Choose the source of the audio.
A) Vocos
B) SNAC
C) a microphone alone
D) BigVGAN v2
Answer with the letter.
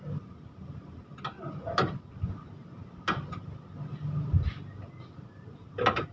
C